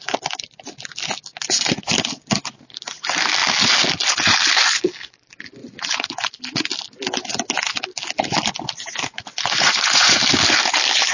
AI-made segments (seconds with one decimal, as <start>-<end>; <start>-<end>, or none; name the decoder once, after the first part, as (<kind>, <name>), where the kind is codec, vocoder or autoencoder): 5.6-6.3 (vocoder, Vocos); 9.3-10.2